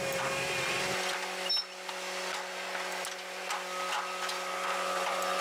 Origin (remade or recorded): recorded